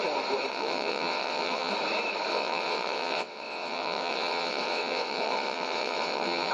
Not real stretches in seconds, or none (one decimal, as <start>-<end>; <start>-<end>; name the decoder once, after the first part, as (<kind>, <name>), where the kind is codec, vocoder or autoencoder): 0.5-1.7 (vocoder, WaveNeXt); 2.3-6.5